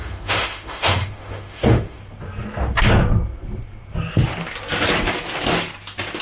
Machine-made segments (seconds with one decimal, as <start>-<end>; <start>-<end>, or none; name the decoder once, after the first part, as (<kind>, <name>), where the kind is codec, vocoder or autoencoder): 0.0-2.0 (autoencoder, DAC-VAE)